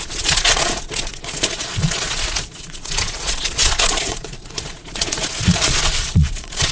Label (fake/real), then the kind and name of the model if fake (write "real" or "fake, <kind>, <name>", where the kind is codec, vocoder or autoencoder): fake, vocoder, Vocos